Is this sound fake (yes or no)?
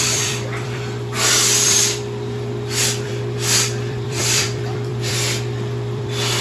yes